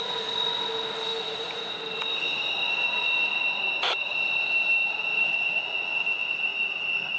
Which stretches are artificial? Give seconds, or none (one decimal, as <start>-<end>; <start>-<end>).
1.1-1.8; 5.1-5.6